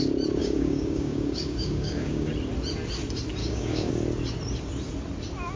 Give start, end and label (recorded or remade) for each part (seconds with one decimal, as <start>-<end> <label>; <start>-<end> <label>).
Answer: 0.0-0.4 recorded; 0.4-2.3 remade; 2.3-3.4 recorded; 3.4-3.9 remade; 3.9-5.6 recorded